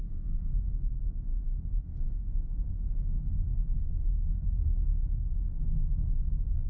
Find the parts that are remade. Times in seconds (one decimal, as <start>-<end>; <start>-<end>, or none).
0.0-6.7